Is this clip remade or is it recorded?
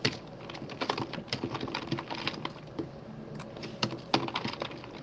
recorded